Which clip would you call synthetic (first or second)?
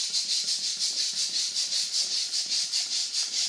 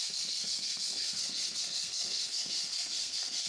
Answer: second